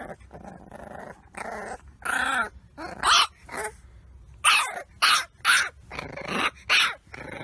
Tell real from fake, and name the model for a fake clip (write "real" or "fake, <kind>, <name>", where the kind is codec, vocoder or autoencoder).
real